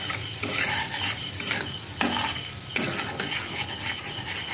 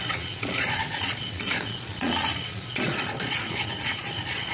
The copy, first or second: second